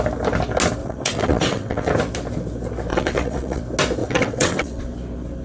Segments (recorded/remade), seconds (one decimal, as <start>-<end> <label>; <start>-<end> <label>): 0.0-0.8 recorded; 0.8-1.9 remade; 1.9-2.9 recorded; 2.9-3.6 remade; 3.6-4.0 recorded; 4.0-4.8 remade; 4.8-5.4 recorded